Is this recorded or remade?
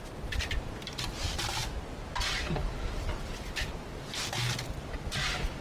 recorded